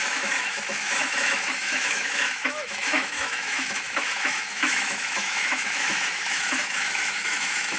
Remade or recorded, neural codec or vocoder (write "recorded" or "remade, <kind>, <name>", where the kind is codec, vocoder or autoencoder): remade, autoencoder, DAC-VAE